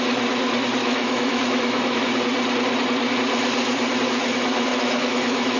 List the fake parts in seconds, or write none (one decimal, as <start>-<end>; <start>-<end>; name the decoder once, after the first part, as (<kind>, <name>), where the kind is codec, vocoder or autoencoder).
0.8-2.0 (autoencoder, DAC-VAE); 4.7-5.6